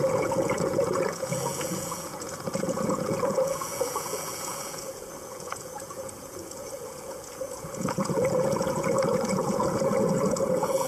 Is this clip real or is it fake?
fake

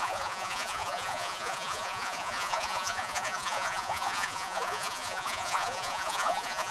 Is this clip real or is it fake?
fake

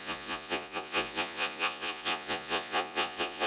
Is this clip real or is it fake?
fake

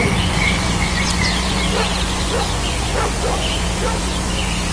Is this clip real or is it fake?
fake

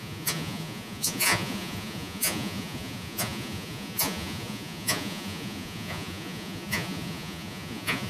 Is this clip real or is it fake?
fake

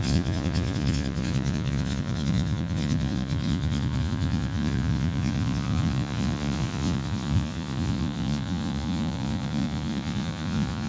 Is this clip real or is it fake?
fake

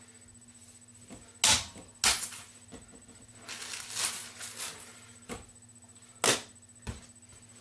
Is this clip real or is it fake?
real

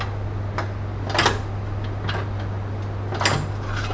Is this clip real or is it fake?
real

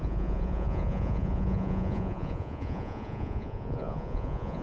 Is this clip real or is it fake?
fake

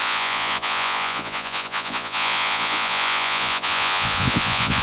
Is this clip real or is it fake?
fake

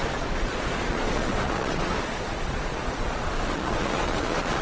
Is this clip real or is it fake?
fake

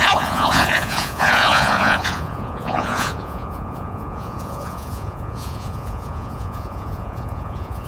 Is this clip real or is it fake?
fake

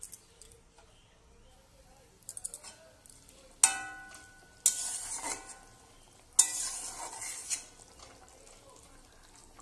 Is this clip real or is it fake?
real